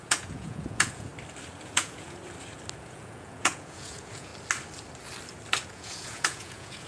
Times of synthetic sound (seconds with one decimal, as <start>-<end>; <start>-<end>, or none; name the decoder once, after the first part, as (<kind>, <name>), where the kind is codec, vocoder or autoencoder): 0.0-1.1 (vocoder, Vocos); 1.6-2.2; 2.8-4.3; 5.7-6.9